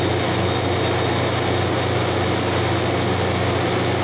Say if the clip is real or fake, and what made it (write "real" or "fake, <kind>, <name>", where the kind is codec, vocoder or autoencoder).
real